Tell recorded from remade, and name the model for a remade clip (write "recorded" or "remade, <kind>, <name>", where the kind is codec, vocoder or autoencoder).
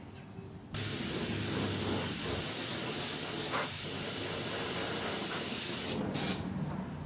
recorded